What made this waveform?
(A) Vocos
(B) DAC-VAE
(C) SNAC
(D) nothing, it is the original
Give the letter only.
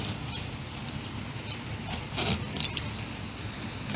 D